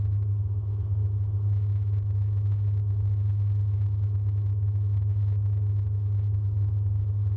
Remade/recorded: recorded